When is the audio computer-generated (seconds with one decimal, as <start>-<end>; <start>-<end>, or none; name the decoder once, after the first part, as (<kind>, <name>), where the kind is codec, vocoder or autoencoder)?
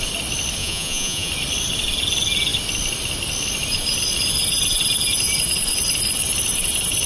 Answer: 0.6-1.3 (vocoder, Vocos)